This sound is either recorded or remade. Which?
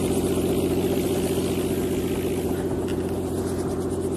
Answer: recorded